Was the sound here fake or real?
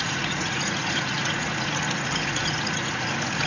fake